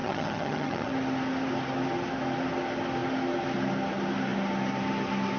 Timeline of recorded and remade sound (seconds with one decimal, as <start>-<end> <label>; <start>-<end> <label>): 0.0-0.9 remade; 0.9-5.4 recorded